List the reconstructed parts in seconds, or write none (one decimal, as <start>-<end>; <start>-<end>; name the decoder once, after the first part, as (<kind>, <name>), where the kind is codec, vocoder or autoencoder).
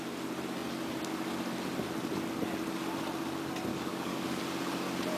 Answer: 3.7-4.4 (codec, DAC)